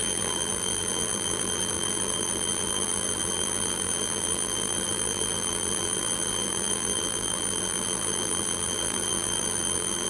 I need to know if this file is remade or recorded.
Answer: remade